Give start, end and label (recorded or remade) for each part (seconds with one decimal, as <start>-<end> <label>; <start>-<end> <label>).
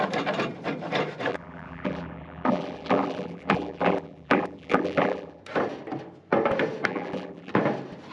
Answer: 0.0-1.3 recorded; 1.3-5.4 remade; 5.4-6.9 recorded; 6.9-7.5 remade; 7.5-8.1 recorded